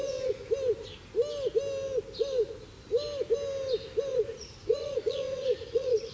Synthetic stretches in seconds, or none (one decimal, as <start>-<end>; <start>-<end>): 0.0-0.5; 4.1-6.1